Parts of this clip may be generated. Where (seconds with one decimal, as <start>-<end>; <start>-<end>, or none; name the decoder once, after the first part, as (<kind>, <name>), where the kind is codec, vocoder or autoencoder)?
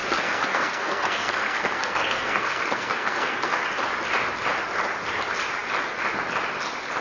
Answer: 0.0-3.6 (codec, SNAC)